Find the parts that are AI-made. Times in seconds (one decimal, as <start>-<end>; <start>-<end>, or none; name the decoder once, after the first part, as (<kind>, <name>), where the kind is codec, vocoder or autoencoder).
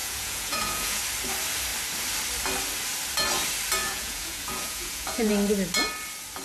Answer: 0.0-1.0 (vocoder, Vocos); 3.8-5.3